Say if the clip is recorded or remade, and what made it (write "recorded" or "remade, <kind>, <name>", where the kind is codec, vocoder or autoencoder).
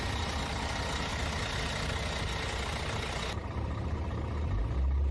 recorded